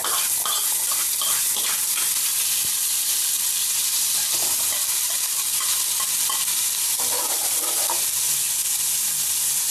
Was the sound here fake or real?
real